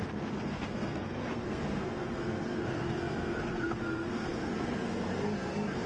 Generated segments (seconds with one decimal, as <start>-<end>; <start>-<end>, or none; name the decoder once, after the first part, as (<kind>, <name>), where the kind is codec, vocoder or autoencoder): 0.0-5.9 (codec, SNAC)

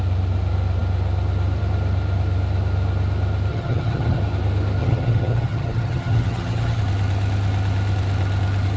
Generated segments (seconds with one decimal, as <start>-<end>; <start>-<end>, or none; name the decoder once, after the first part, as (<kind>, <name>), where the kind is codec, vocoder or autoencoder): 3.5-4.2 (vocoder, HiFi-GAN); 4.8-6.8

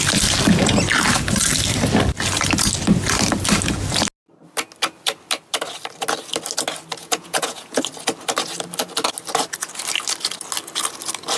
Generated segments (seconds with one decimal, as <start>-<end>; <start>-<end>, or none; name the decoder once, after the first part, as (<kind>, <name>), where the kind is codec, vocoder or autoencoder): 7.0-7.8 (vocoder, Vocos)